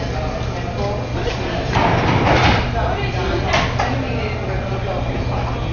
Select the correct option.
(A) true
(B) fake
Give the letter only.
A